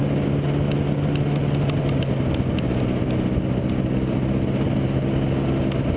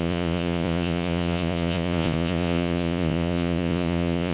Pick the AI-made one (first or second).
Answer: second